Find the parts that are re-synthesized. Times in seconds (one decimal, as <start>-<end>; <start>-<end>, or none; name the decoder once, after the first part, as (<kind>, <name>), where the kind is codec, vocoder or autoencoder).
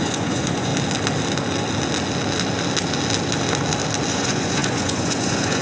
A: 0.0-0.7 (vocoder, Vocos); 4.1-5.6